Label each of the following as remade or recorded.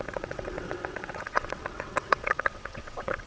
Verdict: remade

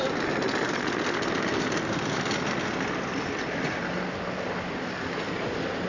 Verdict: recorded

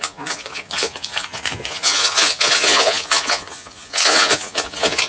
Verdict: remade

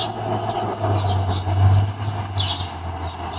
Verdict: recorded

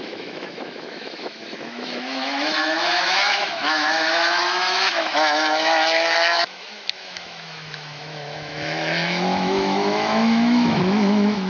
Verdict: remade